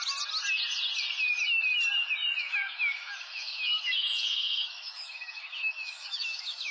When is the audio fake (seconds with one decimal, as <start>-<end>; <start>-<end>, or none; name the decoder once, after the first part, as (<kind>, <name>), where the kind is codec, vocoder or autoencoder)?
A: 2.4-6.7 (autoencoder, DAC-VAE)

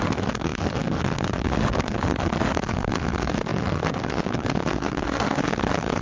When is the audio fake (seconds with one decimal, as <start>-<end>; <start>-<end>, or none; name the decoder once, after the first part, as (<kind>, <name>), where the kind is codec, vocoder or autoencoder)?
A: 0.0-6.0 (autoencoder, DAC-VAE)

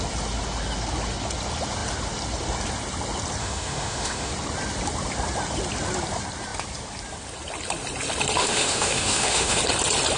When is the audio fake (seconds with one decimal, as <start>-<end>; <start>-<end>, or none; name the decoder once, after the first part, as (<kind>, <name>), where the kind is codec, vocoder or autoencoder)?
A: 3.4-4.3 (autoencoder, DAC-VAE); 8.4-9.6

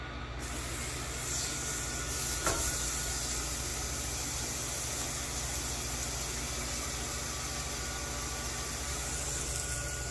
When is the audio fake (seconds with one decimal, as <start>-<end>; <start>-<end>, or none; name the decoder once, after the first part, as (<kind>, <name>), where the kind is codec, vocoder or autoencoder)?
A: none

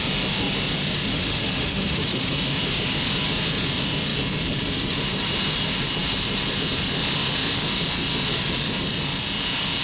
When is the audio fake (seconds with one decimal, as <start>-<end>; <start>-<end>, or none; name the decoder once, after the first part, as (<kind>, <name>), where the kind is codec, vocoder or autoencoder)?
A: 1.1-2.3 (autoencoder, DAC-VAE)

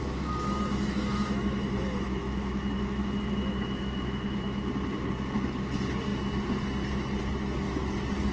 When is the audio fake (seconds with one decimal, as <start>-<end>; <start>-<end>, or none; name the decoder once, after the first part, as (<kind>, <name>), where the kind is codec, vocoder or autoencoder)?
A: 0.0-4.7 (autoencoder, DAC-VAE)